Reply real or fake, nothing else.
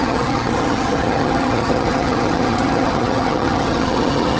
fake